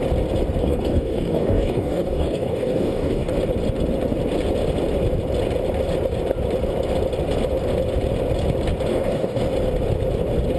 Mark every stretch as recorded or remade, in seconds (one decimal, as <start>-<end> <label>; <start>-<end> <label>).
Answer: 0.0-0.6 recorded; 0.6-3.3 remade; 3.3-8.9 recorded; 8.9-9.4 remade; 9.4-10.6 recorded